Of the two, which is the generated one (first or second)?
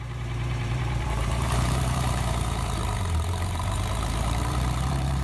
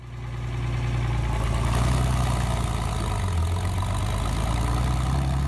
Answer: first